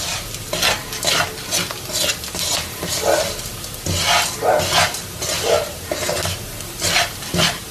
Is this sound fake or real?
real